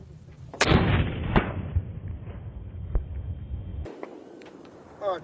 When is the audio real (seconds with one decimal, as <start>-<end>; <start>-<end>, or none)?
3.1-3.7